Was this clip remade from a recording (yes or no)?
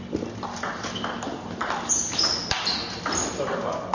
no